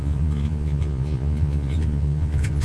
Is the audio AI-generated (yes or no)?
yes